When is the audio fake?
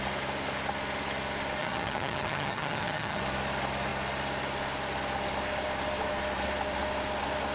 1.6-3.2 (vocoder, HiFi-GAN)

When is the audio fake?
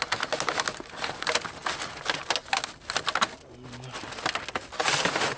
none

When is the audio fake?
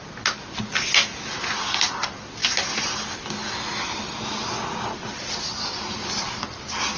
none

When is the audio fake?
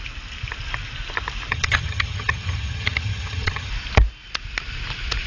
1.5-3.7 (vocoder, HiFi-GAN)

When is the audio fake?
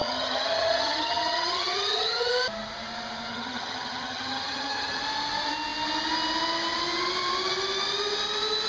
0.0-2.3 (vocoder, HiFi-GAN); 3.3-5.0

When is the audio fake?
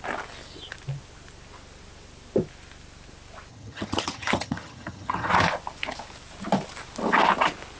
3.5-5.3 (vocoder, HiFi-GAN)